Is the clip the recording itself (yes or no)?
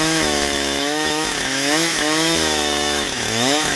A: no